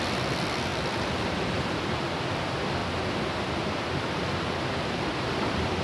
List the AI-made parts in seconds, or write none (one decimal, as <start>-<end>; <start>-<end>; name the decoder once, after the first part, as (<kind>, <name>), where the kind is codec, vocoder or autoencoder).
none